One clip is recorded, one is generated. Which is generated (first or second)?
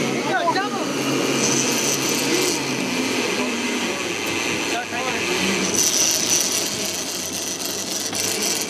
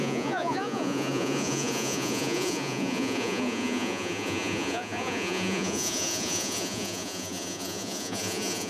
second